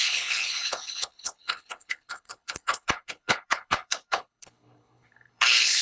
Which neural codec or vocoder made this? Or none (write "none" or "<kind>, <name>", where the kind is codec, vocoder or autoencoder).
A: codec, HILCodec